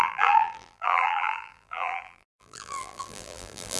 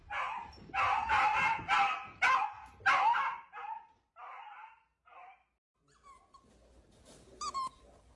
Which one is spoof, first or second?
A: first